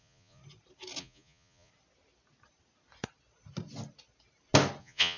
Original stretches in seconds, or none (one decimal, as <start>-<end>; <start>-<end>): 0.4-1.0; 1.7-4.8